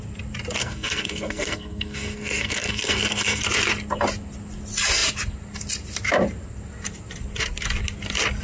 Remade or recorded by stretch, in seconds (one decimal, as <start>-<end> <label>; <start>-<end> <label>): 0.0-0.6 recorded; 0.6-3.4 remade; 3.4-8.4 recorded